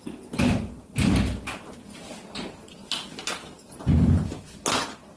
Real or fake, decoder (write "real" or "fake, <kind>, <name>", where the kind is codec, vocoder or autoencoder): real